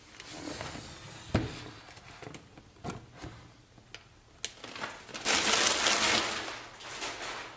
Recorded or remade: recorded